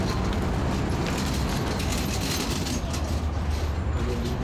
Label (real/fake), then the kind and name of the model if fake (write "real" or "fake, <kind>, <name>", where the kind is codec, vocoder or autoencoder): real